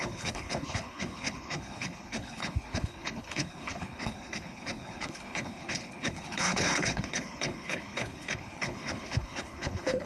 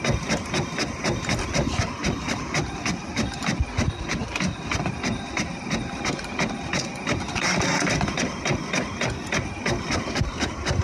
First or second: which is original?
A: second